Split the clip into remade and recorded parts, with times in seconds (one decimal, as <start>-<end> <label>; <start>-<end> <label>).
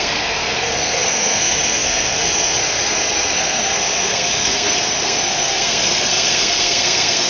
0.0-7.3 remade